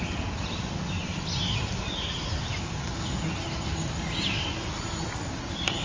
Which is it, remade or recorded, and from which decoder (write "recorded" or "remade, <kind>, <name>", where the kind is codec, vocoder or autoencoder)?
recorded